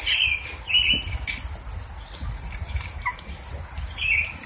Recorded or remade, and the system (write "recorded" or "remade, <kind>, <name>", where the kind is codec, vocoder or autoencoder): recorded